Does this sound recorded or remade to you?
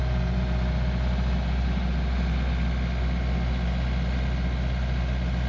recorded